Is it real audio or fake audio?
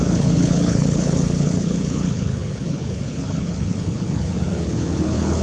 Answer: fake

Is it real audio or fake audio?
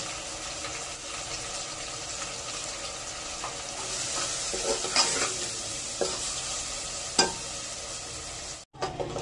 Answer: real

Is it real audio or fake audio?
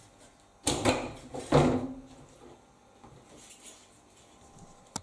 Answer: real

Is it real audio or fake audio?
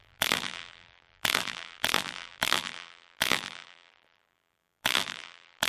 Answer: fake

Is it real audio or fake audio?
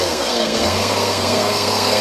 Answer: fake